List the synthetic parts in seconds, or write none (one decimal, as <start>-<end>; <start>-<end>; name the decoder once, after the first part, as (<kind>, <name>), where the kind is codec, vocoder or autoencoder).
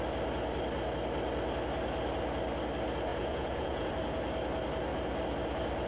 3.1-3.9 (vocoder, Vocos)